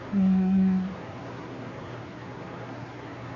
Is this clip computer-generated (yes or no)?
yes